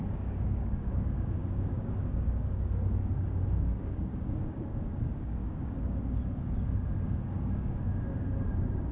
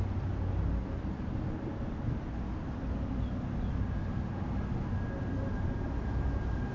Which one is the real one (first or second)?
second